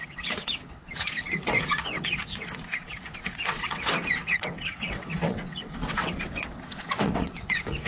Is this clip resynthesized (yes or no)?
yes